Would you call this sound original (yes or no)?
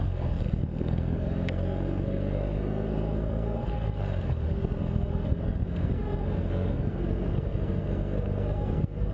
no